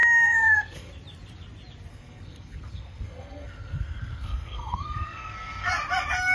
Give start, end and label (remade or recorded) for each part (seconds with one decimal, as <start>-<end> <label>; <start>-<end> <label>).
0.0-0.9 remade; 0.9-1.9 recorded; 1.9-5.7 remade; 5.7-6.3 recorded